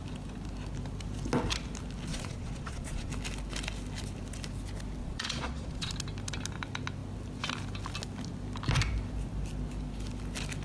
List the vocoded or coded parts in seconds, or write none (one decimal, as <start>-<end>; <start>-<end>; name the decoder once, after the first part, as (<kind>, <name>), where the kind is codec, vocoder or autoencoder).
2.1-3.1 (vocoder, Vocos); 5.0-5.9